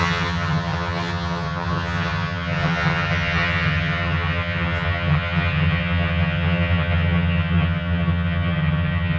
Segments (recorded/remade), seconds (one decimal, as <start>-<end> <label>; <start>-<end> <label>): 0.0-9.2 remade